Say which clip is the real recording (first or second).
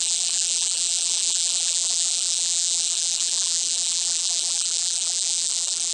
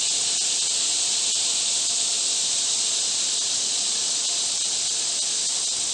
second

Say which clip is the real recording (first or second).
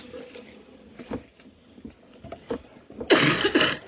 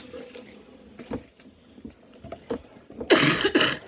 second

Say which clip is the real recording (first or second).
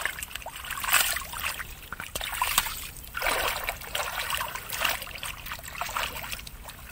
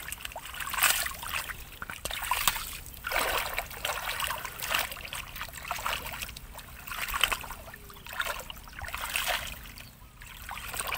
second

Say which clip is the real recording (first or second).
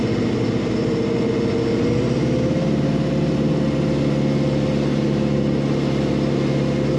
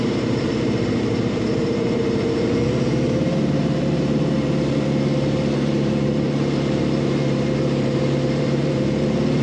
first